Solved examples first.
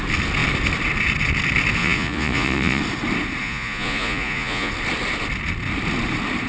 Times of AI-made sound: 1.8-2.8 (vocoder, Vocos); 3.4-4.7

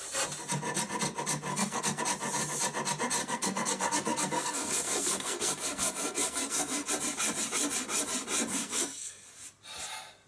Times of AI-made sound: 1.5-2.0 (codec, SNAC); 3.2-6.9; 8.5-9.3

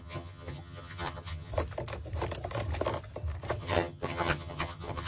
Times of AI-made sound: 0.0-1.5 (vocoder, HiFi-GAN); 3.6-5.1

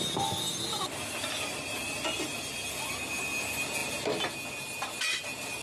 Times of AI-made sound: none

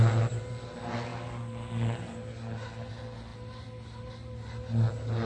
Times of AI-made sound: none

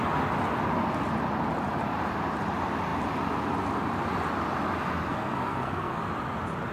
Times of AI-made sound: 5.1-6.0 (codec, SNAC)

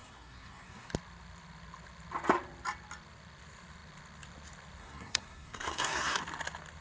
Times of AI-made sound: 0.0-0.9 (codec, SNAC); 4.8-6.2